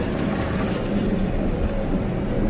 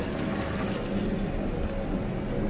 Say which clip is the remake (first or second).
first